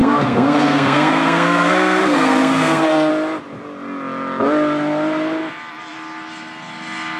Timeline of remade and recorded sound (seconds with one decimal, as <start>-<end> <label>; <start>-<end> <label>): 0.0-3.1 remade; 3.1-7.2 recorded